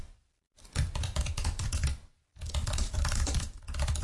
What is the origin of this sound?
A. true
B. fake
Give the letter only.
B